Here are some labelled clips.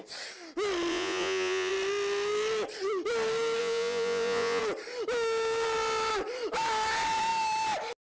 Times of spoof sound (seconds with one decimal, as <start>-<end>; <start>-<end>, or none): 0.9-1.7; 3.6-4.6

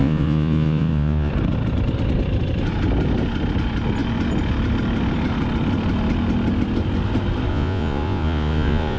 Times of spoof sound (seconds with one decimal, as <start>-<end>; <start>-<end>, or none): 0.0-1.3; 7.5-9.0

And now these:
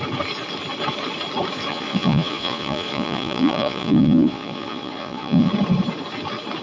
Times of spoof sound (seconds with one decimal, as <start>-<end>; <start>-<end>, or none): 1.7-5.5

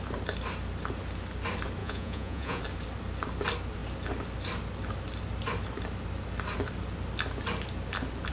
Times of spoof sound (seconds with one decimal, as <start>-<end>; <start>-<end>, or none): 1.8-2.6

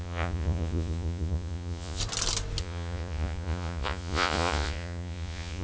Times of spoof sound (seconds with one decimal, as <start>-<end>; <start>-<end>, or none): 0.0-2.0; 2.6-5.6

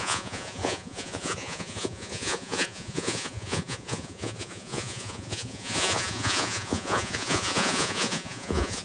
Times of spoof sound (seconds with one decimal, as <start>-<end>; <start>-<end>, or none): 0.0-8.8